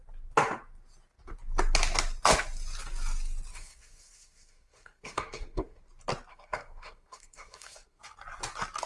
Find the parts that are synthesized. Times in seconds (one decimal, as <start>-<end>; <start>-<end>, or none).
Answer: 3.5-5.8; 6.3-8.0